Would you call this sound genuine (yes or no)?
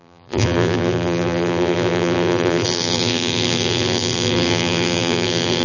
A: no